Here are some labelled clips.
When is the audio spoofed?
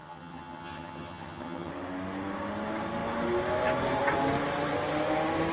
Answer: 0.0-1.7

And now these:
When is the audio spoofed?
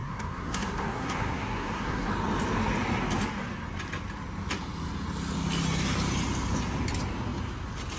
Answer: 0.0-2.1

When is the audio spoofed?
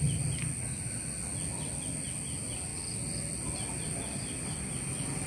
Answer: none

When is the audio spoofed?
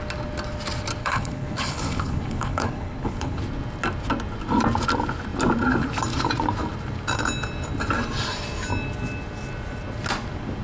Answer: 1.0-3.4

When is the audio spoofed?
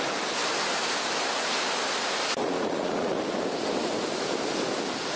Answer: 2.4-3.2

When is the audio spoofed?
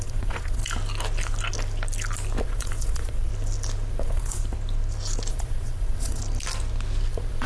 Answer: 0.0-0.6; 2.4-3.3; 3.9-4.4; 5.3-6.2; 7.1-7.5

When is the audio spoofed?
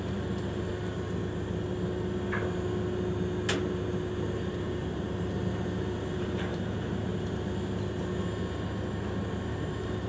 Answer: 0.0-0.7; 4.9-7.1; 9.5-10.1